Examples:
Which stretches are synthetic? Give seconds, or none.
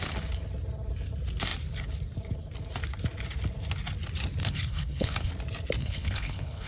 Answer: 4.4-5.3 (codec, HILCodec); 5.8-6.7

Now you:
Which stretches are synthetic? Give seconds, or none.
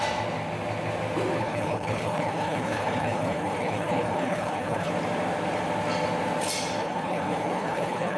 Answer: 1.4-4.9 (codec, HILCodec); 6.8-8.2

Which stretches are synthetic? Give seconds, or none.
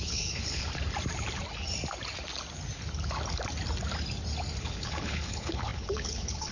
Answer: 0.0-0.7 (codec, HILCodec); 4.6-6.5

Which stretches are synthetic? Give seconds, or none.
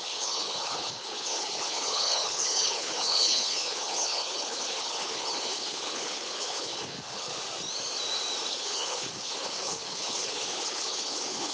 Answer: 0.0-7.3 (codec, HILCodec); 8.5-11.5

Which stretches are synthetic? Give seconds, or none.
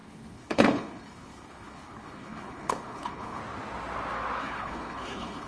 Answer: 0.0-3.4 (codec, HILCodec); 4.4-5.5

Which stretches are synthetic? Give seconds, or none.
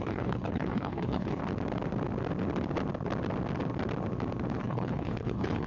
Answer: 0.0-1.4 (codec, HILCodec); 4.6-5.7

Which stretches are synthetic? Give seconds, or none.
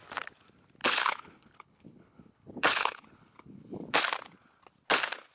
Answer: 0.8-4.0 (codec, HILCodec)